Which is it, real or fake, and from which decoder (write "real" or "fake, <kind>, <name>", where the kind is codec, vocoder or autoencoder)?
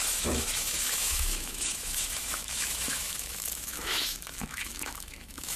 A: fake, autoencoder, DAC-VAE